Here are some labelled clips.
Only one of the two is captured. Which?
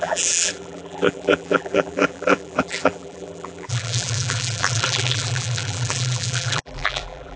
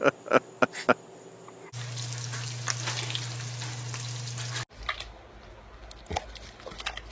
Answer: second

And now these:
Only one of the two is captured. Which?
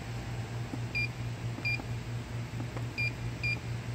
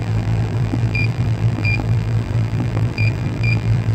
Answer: first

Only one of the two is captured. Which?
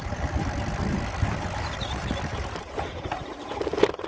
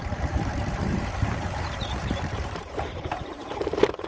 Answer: first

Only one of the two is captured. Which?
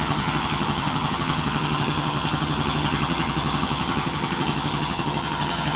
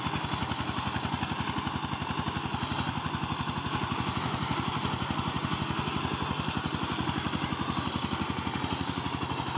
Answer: second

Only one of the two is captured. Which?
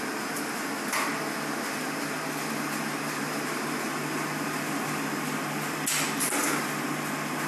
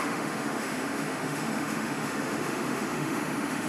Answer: first